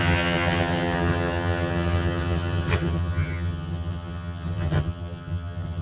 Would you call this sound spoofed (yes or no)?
yes